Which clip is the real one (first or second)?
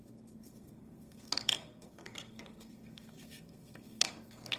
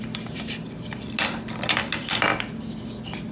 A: second